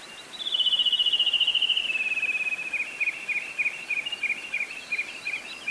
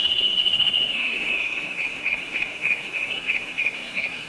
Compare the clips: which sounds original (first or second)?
first